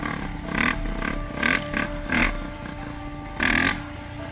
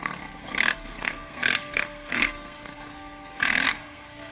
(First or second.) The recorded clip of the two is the first